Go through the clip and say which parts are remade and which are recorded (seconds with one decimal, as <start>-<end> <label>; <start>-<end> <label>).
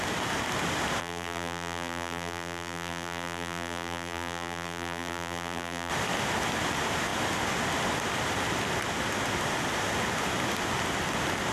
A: 0.0-1.0 recorded; 1.0-5.9 remade; 5.9-11.5 recorded